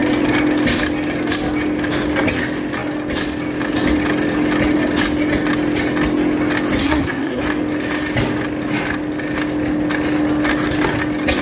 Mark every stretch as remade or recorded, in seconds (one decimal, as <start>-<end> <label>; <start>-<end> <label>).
0.0-6.8 recorded; 6.8-7.4 remade; 7.4-11.4 recorded